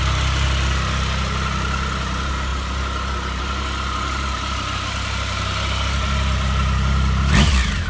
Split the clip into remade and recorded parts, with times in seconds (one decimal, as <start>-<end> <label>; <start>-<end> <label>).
0.0-7.9 recorded